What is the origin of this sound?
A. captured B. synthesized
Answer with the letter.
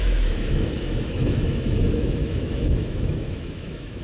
B